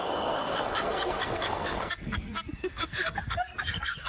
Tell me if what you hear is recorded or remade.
remade